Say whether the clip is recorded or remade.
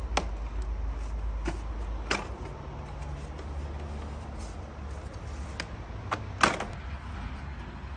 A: recorded